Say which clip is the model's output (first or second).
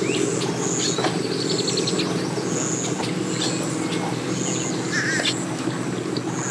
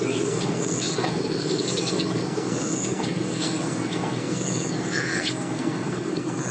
second